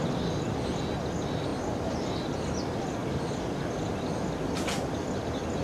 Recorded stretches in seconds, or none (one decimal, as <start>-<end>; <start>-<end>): 0.0-5.6